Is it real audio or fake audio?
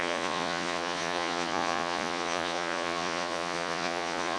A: fake